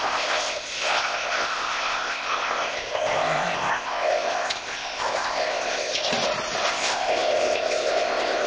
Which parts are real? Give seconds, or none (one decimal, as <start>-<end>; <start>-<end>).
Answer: 6.1-6.7